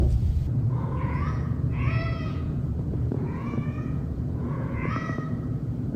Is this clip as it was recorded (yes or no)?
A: no